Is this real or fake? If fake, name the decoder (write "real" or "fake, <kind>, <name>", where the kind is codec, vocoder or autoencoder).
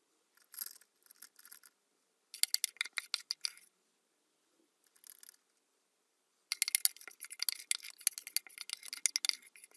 real